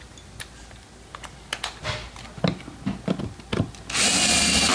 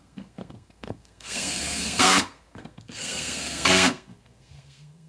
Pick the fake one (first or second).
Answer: second